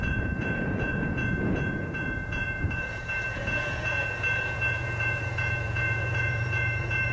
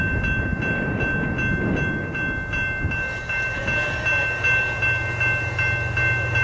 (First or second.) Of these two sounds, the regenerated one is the first